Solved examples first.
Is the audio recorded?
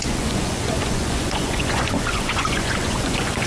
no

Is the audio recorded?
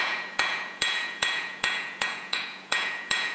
no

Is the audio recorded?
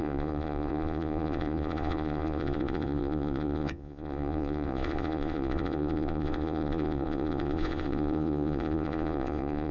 no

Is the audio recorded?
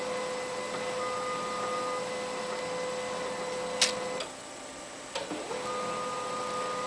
yes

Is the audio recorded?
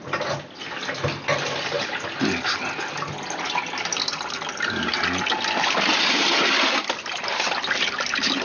yes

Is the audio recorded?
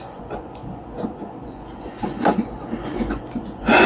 no